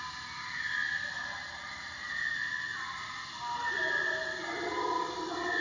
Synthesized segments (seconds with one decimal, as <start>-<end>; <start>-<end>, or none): 2.7-3.2